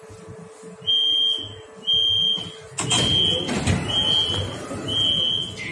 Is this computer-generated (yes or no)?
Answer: no